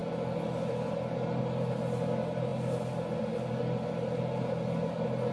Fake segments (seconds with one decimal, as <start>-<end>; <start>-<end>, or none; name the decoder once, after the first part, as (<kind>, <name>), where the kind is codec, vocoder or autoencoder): none